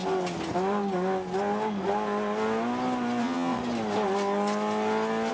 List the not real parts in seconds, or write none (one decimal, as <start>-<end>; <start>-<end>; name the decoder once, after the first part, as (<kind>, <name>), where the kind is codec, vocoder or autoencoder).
3.2-3.6 (vocoder, WaveNeXt)